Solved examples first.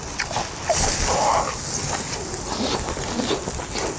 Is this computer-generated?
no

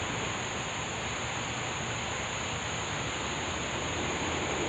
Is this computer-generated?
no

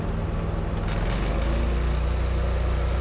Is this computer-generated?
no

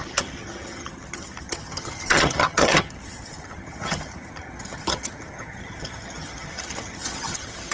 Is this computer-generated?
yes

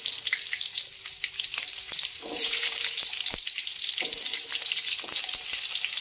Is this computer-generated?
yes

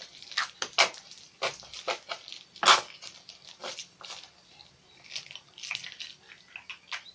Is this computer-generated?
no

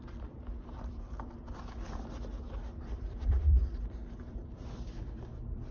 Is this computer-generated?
yes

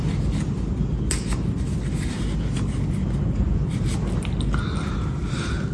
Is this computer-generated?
no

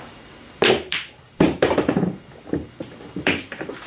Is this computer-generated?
yes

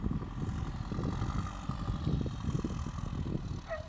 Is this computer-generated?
no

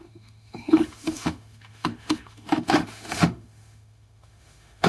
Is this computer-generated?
yes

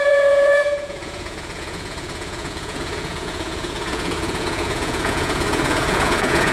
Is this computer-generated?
yes